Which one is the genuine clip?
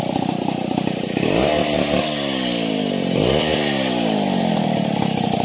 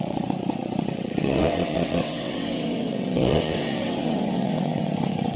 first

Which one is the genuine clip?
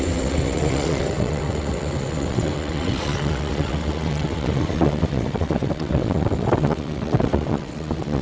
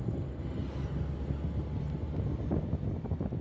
second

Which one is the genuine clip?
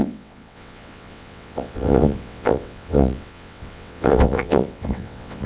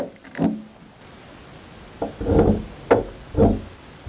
second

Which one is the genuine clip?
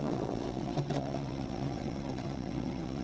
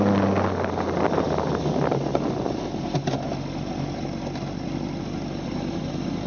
second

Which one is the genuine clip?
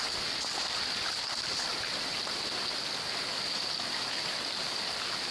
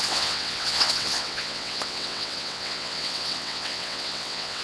first